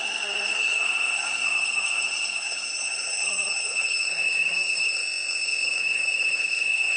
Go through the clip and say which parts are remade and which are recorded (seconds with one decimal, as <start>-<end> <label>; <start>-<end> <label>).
0.0-7.0 remade

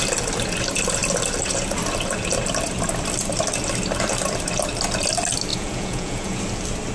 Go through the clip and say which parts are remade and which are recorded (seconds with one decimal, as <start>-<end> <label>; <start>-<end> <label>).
0.0-5.5 recorded; 5.5-6.4 remade; 6.4-6.9 recorded

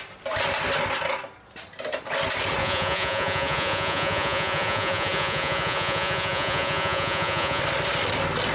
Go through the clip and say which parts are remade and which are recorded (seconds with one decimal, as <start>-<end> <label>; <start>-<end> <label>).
0.0-2.6 recorded; 2.6-7.6 remade; 7.6-8.5 recorded

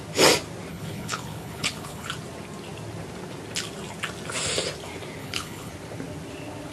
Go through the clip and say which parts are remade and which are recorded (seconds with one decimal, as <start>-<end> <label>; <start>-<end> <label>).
0.0-0.7 recorded; 0.7-2.1 remade; 2.1-5.2 recorded; 5.2-5.7 remade; 5.7-6.7 recorded

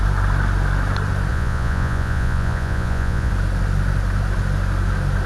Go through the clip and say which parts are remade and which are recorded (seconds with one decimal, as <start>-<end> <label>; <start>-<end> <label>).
0.0-1.3 recorded; 1.3-3.3 remade; 3.3-5.3 recorded